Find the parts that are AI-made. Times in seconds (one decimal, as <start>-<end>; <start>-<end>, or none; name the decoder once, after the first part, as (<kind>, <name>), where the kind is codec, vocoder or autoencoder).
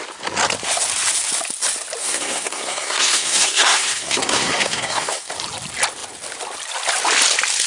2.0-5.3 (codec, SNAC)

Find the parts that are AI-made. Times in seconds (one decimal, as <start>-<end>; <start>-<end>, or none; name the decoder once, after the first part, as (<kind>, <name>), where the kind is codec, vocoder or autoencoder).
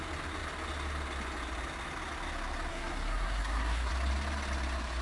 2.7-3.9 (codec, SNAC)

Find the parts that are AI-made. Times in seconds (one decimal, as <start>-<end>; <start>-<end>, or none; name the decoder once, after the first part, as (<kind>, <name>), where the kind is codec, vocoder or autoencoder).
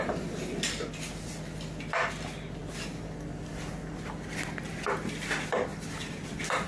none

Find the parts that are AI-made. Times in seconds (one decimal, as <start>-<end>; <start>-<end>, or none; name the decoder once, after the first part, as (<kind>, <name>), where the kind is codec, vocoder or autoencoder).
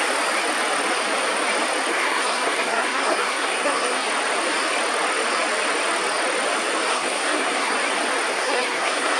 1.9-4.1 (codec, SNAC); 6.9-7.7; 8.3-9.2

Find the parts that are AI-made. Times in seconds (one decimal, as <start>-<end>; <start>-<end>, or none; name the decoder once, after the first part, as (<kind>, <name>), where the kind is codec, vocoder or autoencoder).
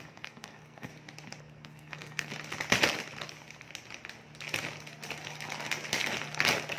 0.0-0.9 (codec, SNAC); 1.4-2.3